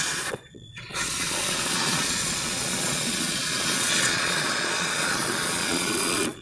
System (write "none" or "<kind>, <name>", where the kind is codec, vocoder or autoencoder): vocoder, Vocos